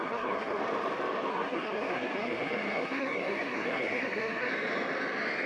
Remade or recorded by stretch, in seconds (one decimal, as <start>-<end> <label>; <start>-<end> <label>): 0.0-0.6 remade; 0.6-1.3 recorded; 1.3-4.5 remade; 4.5-5.5 recorded